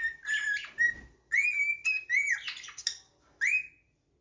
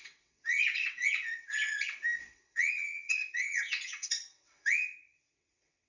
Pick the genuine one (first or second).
first